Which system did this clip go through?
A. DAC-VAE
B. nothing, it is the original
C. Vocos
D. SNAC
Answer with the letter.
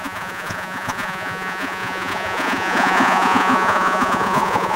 C